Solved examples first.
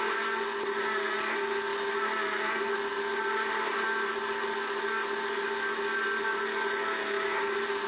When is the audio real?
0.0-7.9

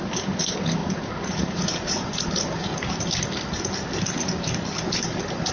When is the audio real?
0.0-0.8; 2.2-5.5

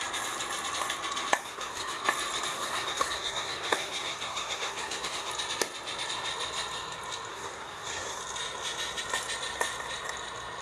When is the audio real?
0.0-1.4; 2.0-2.5; 5.3-7.3; 8.2-10.6